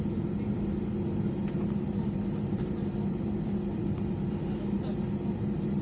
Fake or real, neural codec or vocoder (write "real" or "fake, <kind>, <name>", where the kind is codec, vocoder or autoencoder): real